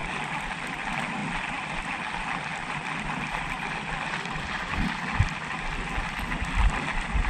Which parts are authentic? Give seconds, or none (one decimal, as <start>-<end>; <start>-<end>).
0.5-2.5; 5.4-7.3